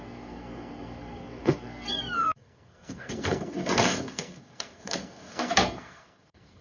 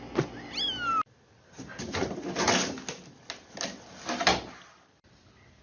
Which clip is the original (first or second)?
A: second